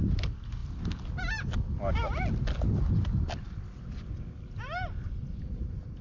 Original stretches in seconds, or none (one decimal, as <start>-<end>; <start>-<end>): 0.0-5.2